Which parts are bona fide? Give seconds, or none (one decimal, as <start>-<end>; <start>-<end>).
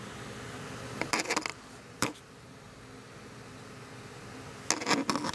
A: 0.0-1.5; 2.8-5.3